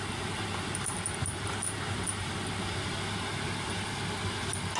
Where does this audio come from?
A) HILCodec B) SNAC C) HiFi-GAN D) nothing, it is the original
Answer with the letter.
D